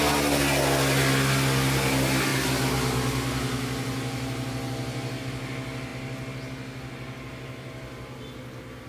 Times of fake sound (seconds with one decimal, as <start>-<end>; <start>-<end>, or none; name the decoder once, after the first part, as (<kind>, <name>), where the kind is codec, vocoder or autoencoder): none